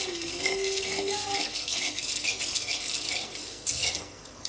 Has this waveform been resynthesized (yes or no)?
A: yes